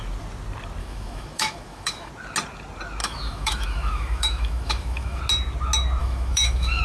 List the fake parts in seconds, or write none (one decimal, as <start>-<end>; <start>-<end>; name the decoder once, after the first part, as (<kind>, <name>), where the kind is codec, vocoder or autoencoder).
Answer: 0.8-2.1 (autoencoder, DAC-VAE); 3.0-5.2; 6.0-6.8